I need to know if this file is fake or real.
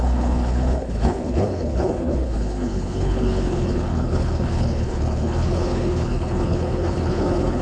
fake